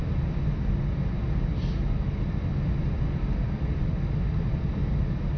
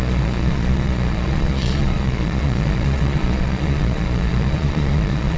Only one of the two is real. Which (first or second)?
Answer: first